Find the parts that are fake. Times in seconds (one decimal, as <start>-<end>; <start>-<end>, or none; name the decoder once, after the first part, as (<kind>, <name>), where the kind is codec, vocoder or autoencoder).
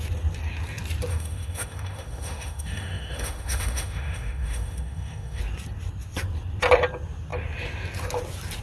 1.1-5.4 (autoencoder, DAC-VAE)